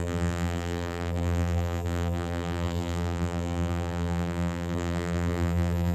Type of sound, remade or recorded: remade